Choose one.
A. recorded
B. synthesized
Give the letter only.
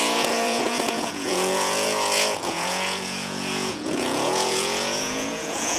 B